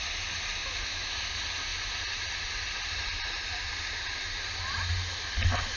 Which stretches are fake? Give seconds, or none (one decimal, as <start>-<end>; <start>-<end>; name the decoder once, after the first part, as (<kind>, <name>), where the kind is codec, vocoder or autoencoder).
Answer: 0.6-1.1 (autoencoder, DAC-VAE)